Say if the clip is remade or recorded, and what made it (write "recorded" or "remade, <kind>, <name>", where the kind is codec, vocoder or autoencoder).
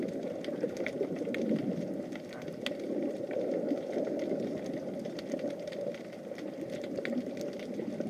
recorded